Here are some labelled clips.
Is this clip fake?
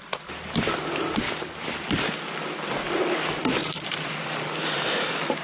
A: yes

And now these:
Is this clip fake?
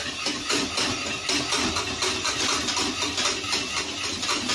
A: no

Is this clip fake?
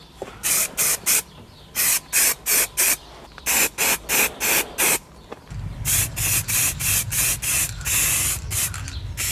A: yes